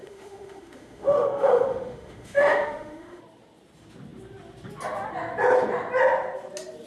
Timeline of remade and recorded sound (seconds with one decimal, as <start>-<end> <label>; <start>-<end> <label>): 0.0-3.2 remade; 3.2-6.9 recorded